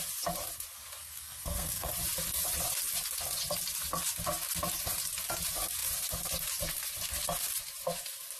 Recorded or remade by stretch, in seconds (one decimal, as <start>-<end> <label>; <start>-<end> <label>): 0.0-1.0 recorded; 1.0-1.9 remade; 1.9-8.4 recorded